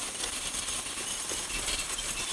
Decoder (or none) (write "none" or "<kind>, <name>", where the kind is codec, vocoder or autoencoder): vocoder, BigVGAN v2